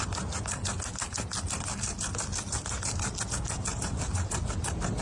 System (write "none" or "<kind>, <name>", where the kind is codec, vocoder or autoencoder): vocoder, BigVGAN v2